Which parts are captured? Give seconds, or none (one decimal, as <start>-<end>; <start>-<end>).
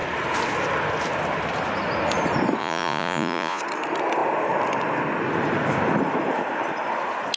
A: 0.0-2.6; 3.6-7.4